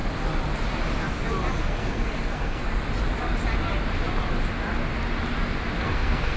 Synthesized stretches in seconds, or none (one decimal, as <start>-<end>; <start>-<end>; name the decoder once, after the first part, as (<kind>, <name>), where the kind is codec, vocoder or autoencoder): 1.6-2.6 (codec, SNAC); 5.8-6.4